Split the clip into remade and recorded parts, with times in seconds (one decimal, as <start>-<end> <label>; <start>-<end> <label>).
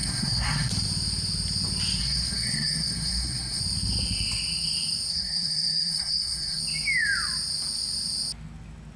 0.0-0.7 remade; 0.7-2.0 recorded; 2.0-3.6 remade; 3.6-5.1 recorded; 5.1-6.6 remade; 6.6-9.0 recorded